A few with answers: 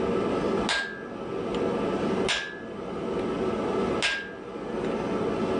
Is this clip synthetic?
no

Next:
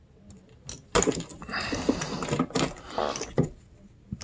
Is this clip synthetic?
no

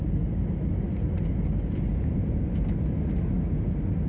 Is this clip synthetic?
no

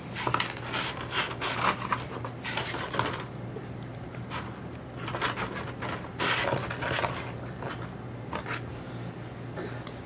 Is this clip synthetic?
no